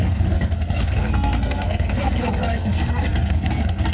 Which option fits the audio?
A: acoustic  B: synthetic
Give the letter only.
B